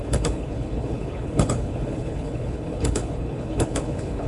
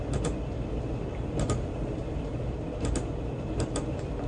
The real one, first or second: second